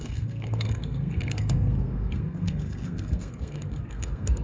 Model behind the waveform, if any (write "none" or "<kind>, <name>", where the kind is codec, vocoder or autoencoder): codec, SNAC